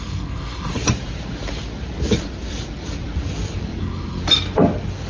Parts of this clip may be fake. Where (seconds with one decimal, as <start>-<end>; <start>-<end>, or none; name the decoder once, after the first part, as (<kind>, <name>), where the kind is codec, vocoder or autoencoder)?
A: 0.0-0.7 (codec, SNAC); 3.8-4.2